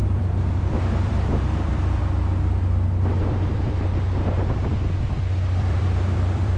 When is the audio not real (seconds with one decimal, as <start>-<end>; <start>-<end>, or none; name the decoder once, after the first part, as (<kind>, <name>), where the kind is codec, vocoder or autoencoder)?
0.0-2.0 (vocoder, BigVGAN v2); 5.6-6.6